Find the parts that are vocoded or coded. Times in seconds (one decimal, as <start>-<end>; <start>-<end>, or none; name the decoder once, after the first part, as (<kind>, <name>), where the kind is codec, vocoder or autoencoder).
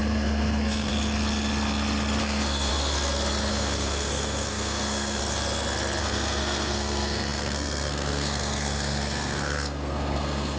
0.0-0.9 (codec, SNAC); 2.2-2.7; 3.5-5.2; 6.0-10.6